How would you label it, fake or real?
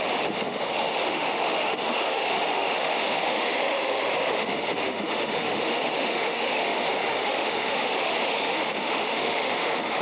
fake